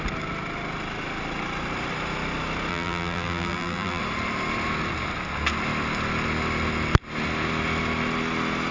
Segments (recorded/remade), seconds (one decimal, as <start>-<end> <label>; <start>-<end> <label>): 0.0-2.7 recorded; 2.7-4.0 remade; 4.0-8.7 recorded